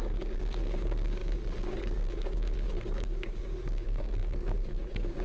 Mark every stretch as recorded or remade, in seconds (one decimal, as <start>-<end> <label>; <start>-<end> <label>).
0.0-5.2 remade